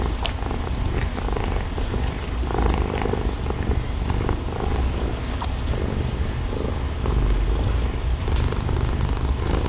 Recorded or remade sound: recorded